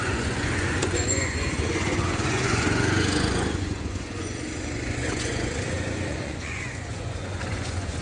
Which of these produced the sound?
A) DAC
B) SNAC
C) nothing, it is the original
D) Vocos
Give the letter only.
D